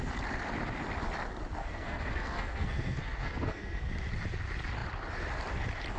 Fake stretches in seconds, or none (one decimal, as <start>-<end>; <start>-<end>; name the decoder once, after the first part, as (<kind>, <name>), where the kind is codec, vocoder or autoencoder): 1.6-3.9 (codec, SNAC)